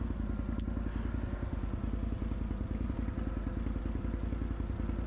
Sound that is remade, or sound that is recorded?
recorded